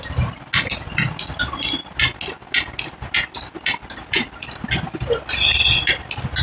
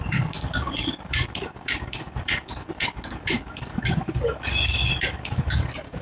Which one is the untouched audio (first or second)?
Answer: first